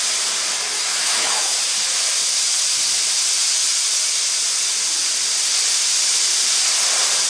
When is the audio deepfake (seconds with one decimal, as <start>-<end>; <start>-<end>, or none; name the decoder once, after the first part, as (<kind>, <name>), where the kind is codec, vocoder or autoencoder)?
0.7-1.6 (autoencoder, DAC-VAE)